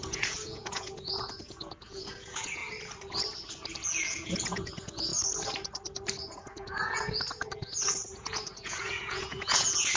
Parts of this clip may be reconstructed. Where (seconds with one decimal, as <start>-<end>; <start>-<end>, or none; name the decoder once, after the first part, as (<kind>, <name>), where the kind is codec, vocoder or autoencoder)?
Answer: 0.0-2.6 (vocoder, Vocos); 3.8-5.1; 6.3-10.0